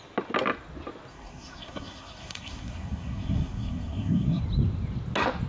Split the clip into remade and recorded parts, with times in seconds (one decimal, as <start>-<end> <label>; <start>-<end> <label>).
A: 0.0-1.1 recorded; 1.1-4.4 remade; 4.4-5.5 recorded